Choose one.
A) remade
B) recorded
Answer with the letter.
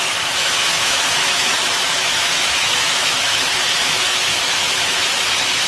A